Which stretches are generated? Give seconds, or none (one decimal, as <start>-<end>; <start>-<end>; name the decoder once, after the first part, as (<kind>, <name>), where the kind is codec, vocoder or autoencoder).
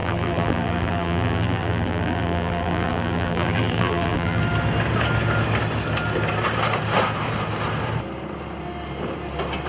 0.0-4.4 (vocoder, BigVGAN v2)